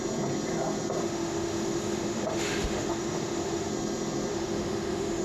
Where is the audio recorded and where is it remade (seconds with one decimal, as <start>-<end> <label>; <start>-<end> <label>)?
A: 0.0-1.0 recorded; 1.0-3.7 remade; 3.7-4.3 recorded; 4.3-5.2 remade